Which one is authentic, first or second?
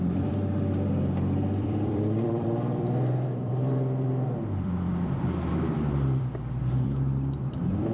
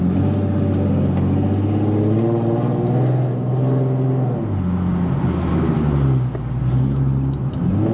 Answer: second